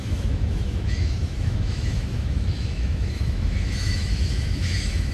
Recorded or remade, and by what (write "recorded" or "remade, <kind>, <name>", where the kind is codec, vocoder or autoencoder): remade, autoencoder, DAC-VAE